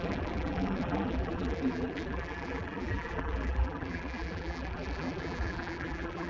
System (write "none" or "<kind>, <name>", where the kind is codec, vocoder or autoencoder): vocoder, BigVGAN v2